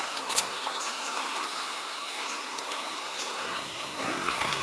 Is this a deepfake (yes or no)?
yes